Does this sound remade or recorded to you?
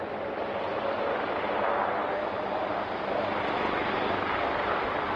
recorded